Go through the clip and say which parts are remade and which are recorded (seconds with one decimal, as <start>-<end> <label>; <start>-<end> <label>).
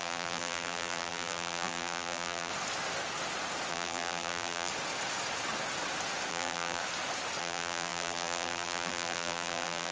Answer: 0.0-2.5 remade; 2.5-3.7 recorded; 3.7-4.7 remade; 4.7-6.3 recorded; 6.3-6.8 remade; 6.8-7.4 recorded; 7.4-9.9 remade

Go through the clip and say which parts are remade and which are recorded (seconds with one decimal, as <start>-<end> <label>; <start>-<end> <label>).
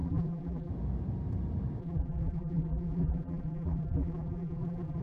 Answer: 0.0-0.7 remade; 0.7-1.8 recorded; 1.8-5.0 remade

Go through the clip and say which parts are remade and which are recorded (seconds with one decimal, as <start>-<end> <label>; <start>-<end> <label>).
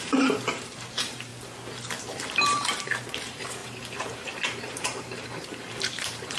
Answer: 0.0-1.3 remade; 1.3-2.0 recorded; 2.0-6.4 remade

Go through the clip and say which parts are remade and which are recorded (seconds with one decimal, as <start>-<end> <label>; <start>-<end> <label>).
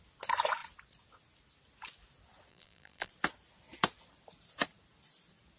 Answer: 0.0-2.5 recorded; 2.5-3.1 remade; 3.1-5.6 recorded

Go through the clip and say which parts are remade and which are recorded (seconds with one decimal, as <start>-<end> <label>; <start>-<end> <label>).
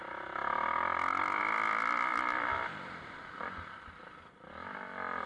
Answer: 0.0-5.3 recorded